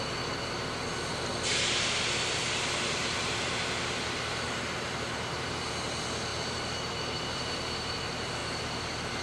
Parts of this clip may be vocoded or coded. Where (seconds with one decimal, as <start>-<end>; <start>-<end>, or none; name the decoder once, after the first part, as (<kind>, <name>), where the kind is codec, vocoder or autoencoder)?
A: 3.0-5.6 (vocoder, BigVGAN v2); 6.3-8.0